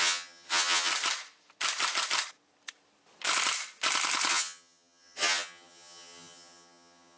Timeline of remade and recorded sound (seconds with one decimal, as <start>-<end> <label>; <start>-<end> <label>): 0.0-0.9 remade; 0.9-4.3 recorded; 4.3-7.2 remade